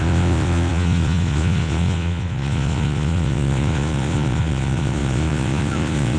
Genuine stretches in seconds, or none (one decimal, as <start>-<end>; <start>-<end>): none